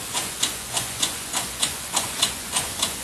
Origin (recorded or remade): remade